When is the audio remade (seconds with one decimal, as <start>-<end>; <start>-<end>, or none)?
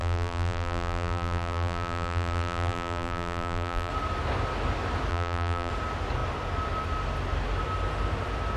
0.0-3.9; 5.1-5.7